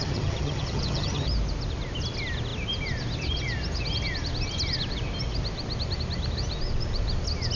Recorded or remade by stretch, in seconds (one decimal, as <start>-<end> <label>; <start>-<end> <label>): 0.0-1.3 remade; 1.3-7.5 recorded